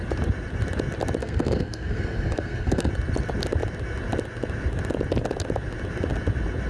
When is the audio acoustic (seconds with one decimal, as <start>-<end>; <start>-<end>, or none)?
0.0-1.2; 2.9-6.7

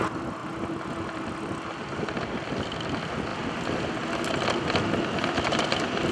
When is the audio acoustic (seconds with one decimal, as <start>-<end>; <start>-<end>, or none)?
0.0-6.1